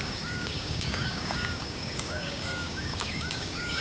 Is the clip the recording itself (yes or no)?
no